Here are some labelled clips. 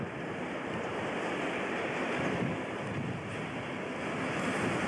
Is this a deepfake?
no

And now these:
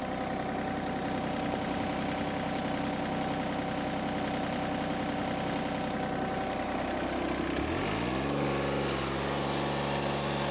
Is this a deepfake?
no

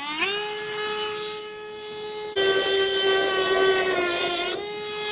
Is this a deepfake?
no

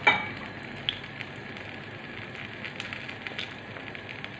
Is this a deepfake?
no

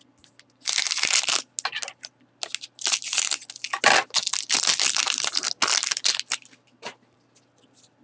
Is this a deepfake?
no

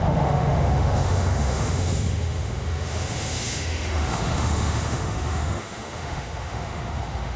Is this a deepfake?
yes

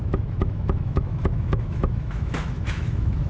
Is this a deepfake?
yes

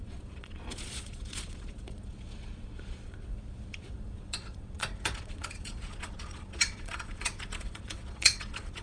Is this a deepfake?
yes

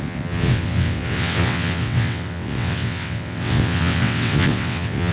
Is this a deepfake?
yes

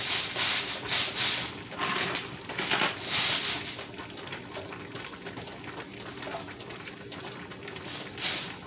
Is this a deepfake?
no